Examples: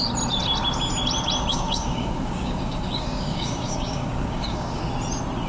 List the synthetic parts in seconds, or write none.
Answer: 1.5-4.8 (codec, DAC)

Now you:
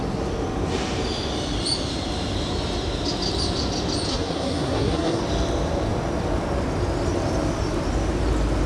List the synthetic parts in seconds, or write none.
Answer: 4.1-5.2 (codec, SNAC)